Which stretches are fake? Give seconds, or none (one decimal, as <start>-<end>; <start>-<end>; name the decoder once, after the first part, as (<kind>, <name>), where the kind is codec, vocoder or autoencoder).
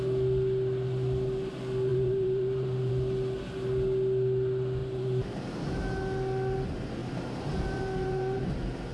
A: 1.9-2.9 (vocoder, BigVGAN v2); 4.8-5.4; 7.0-8.4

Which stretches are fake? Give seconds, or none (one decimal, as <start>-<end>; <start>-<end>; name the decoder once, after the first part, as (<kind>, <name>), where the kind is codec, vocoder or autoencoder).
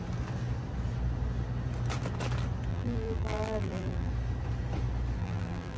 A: 2.7-4.1 (vocoder, BigVGAN v2); 5.2-5.8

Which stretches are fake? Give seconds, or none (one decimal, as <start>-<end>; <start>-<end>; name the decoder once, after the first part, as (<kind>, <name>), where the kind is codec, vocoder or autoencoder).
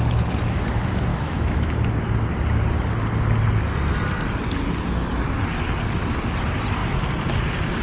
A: 1.1-1.7 (autoencoder, DAC-VAE)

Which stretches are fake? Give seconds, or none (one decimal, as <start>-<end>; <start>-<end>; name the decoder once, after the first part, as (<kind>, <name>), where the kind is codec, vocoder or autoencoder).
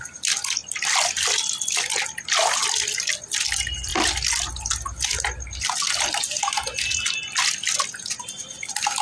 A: none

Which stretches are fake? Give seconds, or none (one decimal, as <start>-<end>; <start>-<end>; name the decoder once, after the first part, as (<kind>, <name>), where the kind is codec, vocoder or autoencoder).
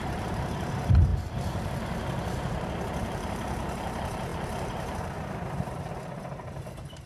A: 0.0-7.1 (vocoder, BigVGAN v2)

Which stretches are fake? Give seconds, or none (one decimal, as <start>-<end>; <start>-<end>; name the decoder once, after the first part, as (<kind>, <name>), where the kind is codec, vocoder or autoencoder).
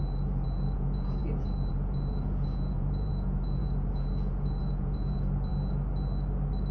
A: 0.0-5.5 (vocoder, Vocos)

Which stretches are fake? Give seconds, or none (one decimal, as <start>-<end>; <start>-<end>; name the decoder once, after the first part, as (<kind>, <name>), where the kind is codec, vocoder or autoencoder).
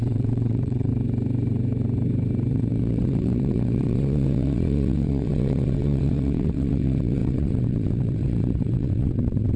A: 0.0-0.9 (vocoder, WaveNeXt); 2.5-9.6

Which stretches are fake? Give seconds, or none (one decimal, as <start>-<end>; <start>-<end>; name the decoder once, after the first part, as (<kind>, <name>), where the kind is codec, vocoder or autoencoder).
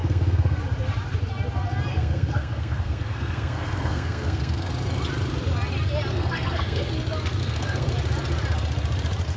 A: 0.0-0.6 (codec, SNAC); 1.9-4.7; 6.1-6.9; 7.4-7.9